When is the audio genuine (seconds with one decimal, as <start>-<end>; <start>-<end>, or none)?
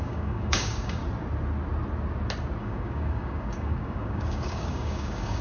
1.0-2.6